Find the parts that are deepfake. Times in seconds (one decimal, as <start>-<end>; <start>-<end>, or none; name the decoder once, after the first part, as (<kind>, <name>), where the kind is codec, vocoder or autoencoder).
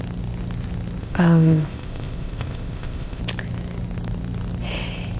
1.0-3.2 (codec, ZipCodec)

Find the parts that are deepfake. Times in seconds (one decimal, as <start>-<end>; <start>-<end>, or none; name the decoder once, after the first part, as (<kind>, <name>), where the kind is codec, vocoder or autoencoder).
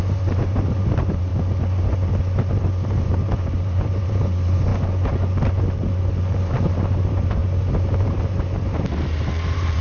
0.0-1.3 (vocoder, BigVGAN v2); 2.6-4.7; 6.4-7.4; 8.0-9.8